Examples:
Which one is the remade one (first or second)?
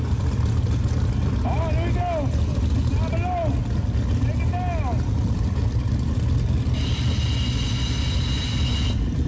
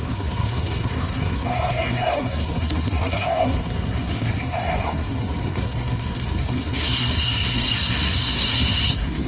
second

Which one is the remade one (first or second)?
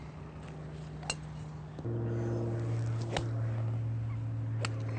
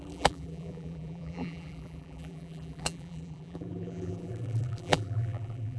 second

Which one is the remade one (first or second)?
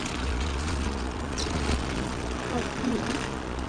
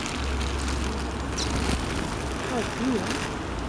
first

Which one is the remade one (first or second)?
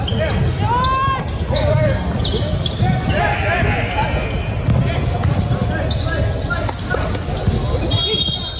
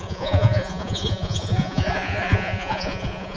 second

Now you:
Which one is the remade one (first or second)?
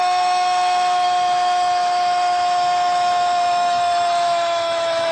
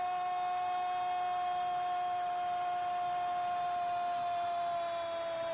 first